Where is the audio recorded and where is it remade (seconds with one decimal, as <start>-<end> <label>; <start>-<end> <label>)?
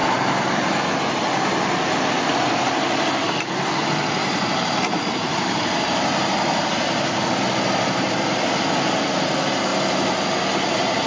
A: 0.0-0.8 remade; 0.8-4.2 recorded; 4.2-8.4 remade; 8.4-11.1 recorded